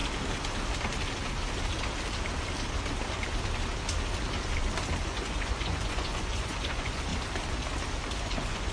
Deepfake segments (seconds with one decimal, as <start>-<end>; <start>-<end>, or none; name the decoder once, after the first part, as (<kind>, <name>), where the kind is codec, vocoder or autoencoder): 5.0-7.1 (vocoder, Vocos); 8.2-8.7